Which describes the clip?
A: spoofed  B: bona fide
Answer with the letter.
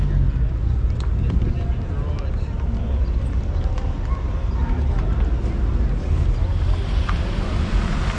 B